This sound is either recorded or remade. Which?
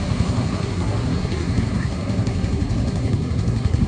remade